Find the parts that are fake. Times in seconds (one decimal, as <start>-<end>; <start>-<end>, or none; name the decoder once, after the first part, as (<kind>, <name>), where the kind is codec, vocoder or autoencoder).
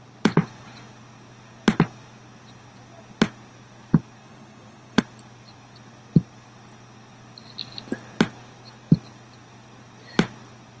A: 4.2-5.0 (vocoder, WaveNeXt)